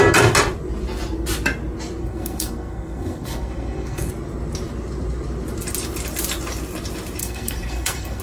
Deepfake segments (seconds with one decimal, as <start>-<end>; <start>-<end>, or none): 2.0-4.1; 7.2-8.2